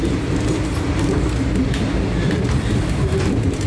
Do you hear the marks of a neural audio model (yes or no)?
no